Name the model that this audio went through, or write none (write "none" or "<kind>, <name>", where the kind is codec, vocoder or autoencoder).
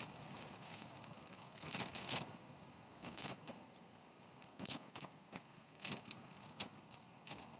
codec, SNAC